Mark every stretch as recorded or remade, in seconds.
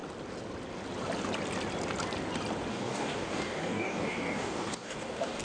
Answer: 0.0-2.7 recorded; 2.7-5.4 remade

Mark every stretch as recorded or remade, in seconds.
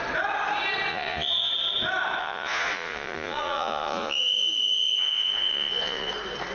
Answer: 0.0-0.9 recorded; 0.9-1.5 remade; 1.5-2.2 recorded; 2.2-6.1 remade; 6.1-6.5 recorded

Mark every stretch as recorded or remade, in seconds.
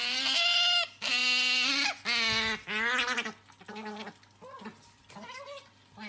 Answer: 0.0-6.1 recorded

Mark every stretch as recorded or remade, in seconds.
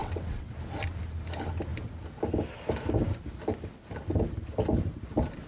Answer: 0.0-0.5 remade; 0.5-5.5 recorded